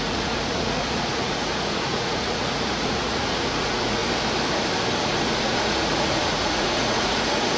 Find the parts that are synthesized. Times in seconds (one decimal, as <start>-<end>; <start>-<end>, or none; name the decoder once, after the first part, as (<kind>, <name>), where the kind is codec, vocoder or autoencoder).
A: 0.0-4.0 (vocoder, Vocos); 5.0-7.6